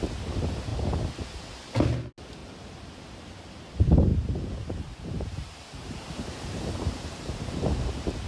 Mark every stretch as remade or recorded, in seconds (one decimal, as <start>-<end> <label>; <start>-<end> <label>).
0.0-2.4 recorded; 2.4-3.0 remade; 3.0-4.1 recorded; 4.1-7.5 remade; 7.5-8.3 recorded